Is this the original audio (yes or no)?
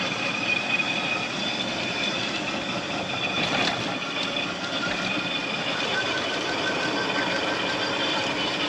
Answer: no